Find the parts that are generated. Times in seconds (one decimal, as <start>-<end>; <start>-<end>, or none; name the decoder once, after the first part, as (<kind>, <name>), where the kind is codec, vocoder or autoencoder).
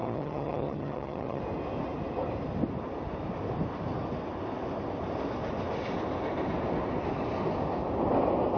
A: 0.0-1.4 (vocoder, HiFi-GAN)